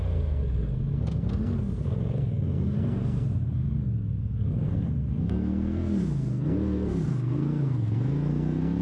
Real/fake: fake